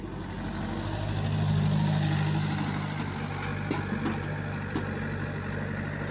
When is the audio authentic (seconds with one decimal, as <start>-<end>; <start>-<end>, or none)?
0.0-6.1